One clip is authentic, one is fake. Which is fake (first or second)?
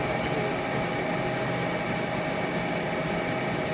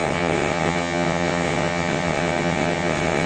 second